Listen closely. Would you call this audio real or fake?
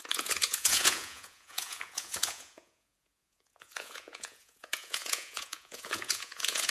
fake